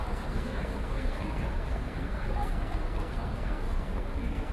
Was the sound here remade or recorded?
remade